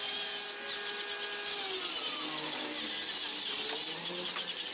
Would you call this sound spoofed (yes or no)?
no